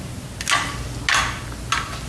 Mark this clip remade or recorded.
recorded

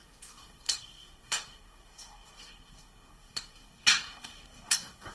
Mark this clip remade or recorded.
remade